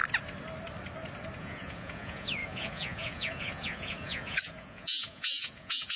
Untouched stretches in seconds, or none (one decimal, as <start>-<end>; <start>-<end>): 0.0-1.4